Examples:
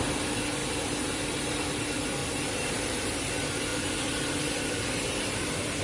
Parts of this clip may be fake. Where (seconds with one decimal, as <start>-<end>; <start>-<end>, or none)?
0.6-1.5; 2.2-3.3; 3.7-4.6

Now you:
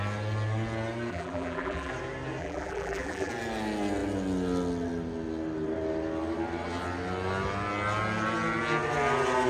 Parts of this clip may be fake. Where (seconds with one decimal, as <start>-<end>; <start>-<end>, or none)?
1.1-1.9; 2.4-3.3

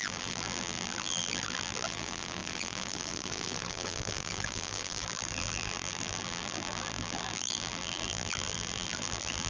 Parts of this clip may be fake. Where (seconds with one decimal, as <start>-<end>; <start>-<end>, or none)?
0.0-9.5

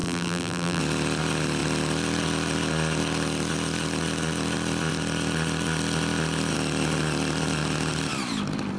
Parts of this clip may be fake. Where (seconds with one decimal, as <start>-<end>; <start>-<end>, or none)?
0.0-0.8

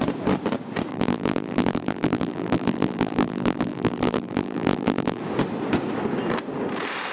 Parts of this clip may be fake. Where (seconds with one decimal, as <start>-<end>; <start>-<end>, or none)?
0.9-5.2

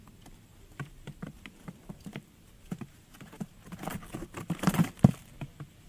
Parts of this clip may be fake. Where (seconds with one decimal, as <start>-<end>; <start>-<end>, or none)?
0.5-2.4; 3.9-4.7

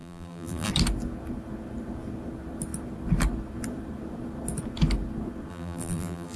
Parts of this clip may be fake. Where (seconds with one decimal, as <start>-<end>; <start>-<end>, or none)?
0.0-0.7; 5.5-6.4

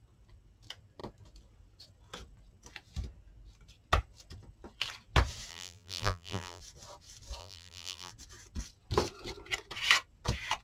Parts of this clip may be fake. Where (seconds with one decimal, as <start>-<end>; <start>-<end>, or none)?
5.5-6.6; 7.4-8.1